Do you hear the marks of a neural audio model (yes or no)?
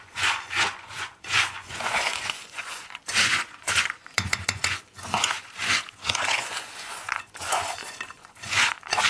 yes